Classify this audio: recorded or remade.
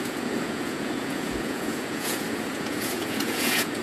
remade